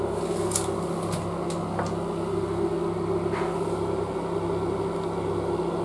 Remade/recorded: recorded